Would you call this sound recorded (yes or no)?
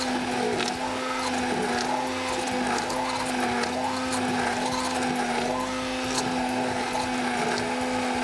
yes